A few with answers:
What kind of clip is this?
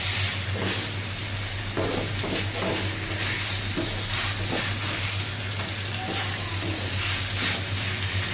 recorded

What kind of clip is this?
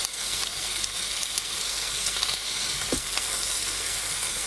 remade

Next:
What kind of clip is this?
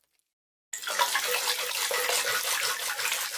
recorded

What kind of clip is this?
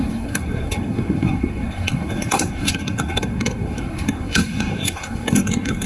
remade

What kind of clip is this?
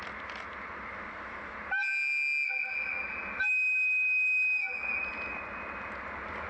recorded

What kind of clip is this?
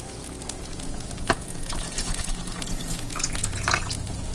remade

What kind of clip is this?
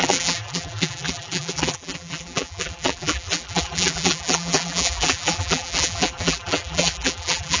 remade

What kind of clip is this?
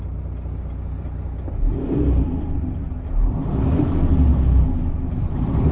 recorded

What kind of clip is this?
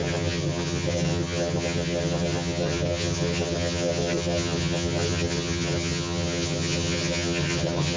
remade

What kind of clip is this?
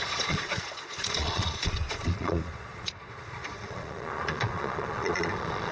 remade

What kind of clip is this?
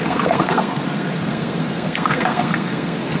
remade